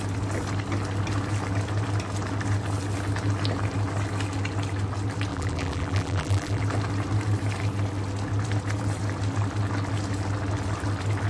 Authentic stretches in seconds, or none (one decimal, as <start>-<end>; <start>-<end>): 0.0-5.3; 6.6-11.3